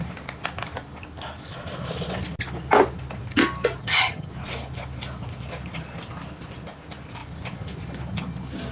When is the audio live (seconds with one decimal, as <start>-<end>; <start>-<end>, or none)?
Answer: 0.0-3.8; 4.3-8.7